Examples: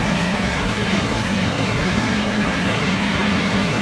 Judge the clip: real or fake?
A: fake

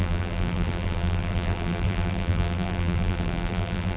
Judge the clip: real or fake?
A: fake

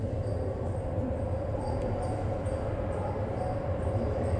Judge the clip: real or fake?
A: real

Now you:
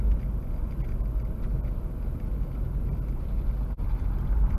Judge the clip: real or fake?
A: real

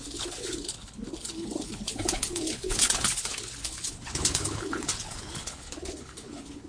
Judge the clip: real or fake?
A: fake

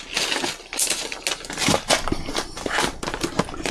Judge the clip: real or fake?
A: real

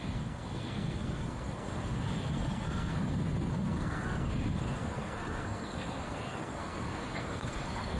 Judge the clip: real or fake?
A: fake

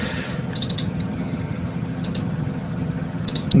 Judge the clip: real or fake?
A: fake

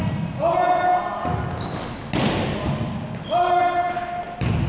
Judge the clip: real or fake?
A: real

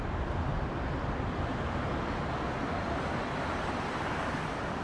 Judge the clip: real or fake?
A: real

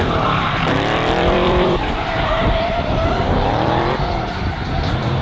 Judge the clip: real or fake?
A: fake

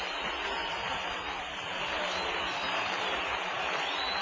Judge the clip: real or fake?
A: real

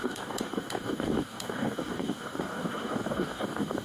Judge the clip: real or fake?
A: fake